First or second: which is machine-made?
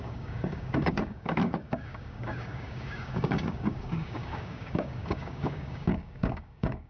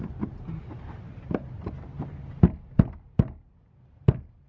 first